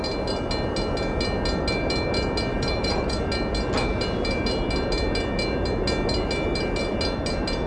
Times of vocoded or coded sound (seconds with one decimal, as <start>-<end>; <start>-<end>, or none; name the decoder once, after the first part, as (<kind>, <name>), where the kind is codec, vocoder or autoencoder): 2.5-3.2 (vocoder, BigVGAN v2)